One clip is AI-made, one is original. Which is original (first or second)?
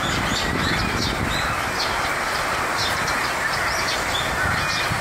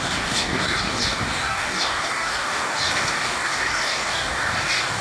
first